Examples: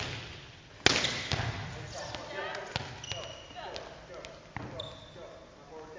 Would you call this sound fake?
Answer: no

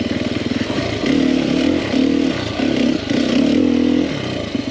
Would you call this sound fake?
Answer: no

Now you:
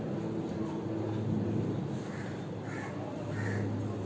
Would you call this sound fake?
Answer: no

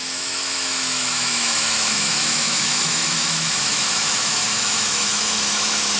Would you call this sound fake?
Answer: yes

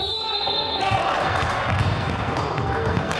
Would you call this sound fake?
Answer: yes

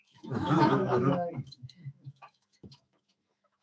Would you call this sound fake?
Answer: yes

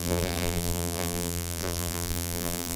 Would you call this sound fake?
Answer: yes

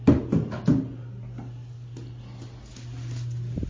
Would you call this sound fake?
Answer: no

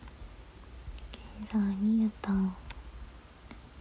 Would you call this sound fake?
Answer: no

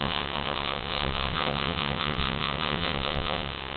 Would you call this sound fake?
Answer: yes